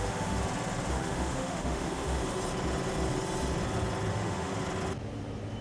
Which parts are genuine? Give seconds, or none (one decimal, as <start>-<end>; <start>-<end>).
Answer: 0.4-0.9; 2.2-4.1; 4.5-5.6